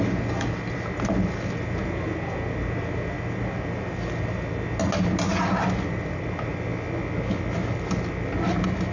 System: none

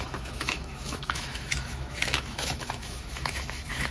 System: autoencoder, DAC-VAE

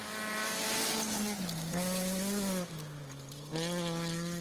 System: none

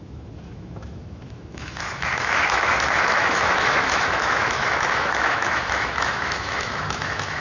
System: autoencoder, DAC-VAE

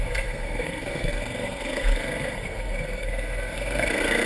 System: codec, SNAC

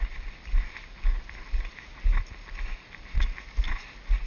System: none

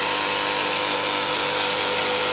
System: none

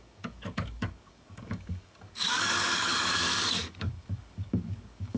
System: codec, DAC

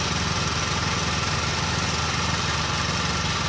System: none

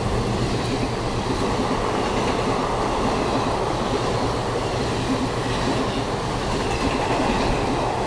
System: none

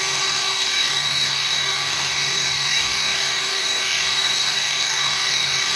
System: codec, DAC